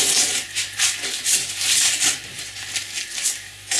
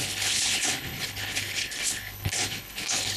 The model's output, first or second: second